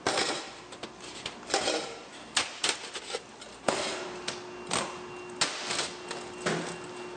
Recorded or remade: recorded